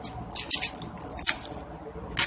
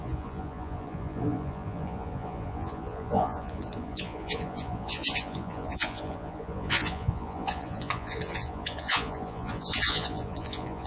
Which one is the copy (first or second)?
second